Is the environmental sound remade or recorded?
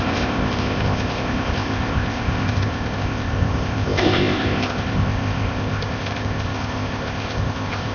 remade